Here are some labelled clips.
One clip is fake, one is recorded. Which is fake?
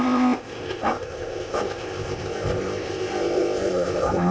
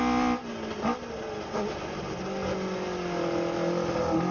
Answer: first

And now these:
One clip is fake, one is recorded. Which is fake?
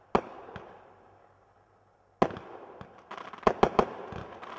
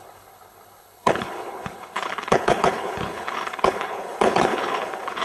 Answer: second